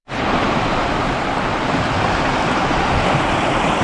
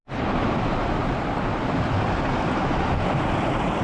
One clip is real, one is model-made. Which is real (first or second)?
second